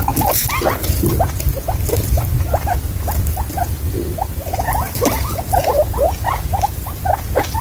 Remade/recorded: recorded